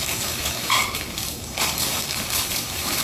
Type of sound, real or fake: fake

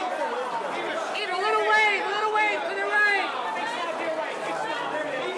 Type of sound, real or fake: real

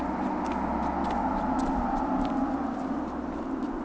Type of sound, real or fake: real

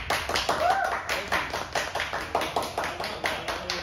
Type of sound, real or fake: real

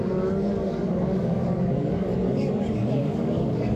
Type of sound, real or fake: fake